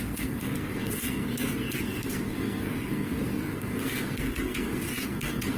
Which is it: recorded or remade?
remade